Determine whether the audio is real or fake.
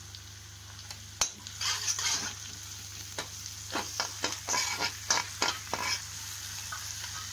real